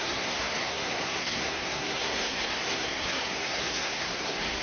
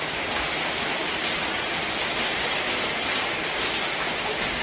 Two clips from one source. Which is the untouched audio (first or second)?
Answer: second